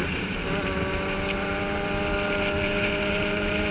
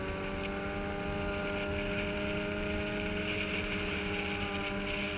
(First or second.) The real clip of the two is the second